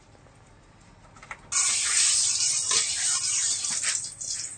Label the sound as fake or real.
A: real